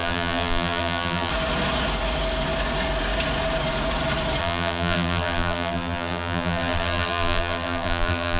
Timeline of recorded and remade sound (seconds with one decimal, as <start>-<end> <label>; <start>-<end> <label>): 0.0-1.3 remade; 1.3-4.4 recorded; 4.4-8.4 remade